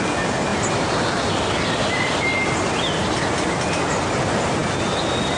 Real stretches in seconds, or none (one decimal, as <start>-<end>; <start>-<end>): 0.0-5.4